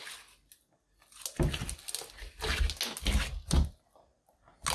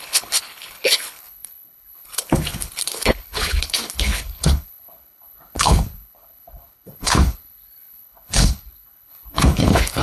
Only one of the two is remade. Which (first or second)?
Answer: second